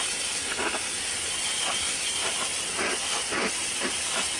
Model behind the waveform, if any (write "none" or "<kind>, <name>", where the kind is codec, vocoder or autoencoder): none